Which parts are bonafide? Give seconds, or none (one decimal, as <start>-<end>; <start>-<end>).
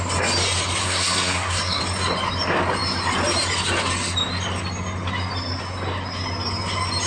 0.0-0.8; 1.8-7.1